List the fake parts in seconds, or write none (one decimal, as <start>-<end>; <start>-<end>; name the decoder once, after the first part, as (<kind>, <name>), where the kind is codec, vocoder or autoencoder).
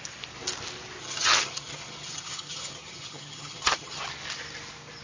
1.0-4.0 (vocoder, HiFi-GAN)